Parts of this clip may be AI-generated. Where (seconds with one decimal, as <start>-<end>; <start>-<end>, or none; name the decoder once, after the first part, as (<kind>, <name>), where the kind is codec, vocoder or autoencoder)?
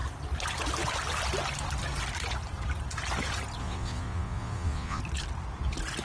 3.6-5.0 (vocoder, Vocos)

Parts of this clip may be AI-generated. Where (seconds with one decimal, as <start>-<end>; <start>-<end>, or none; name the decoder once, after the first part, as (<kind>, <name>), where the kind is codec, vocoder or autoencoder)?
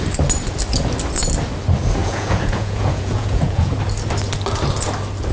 2.0-3.8 (vocoder, Vocos)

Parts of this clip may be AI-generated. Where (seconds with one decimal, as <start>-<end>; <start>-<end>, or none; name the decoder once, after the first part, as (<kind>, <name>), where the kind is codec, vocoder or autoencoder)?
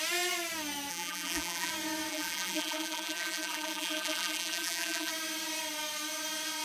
0.9-1.7 (vocoder, BigVGAN v2); 2.1-5.1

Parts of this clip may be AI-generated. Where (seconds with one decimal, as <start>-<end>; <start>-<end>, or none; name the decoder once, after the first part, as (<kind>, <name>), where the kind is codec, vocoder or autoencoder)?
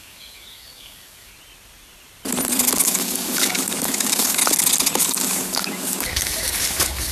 0.0-1.3 (codec, DAC); 2.8-4.4; 5.0-7.1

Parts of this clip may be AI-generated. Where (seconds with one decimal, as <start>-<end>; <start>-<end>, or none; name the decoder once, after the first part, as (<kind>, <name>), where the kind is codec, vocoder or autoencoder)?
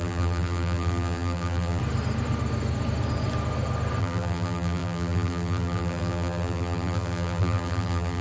0.0-1.8 (vocoder, BigVGAN v2); 4.0-8.2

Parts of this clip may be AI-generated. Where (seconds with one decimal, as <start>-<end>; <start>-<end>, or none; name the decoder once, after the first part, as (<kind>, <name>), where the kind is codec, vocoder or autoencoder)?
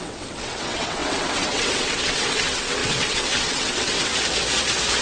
0.0-4.1 (vocoder, WaveNeXt)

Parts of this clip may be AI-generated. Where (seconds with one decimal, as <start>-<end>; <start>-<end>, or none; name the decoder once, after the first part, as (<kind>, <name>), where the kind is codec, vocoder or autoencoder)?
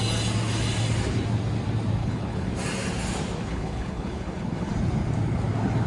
2.0-2.5 (codec, HILCodec); 3.5-4.7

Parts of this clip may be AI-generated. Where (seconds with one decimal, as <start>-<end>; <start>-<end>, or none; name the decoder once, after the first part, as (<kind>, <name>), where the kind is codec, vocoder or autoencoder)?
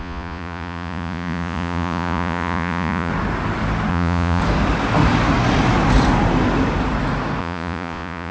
0.0-3.1 (vocoder, Vocos); 3.9-4.4; 7.4-8.3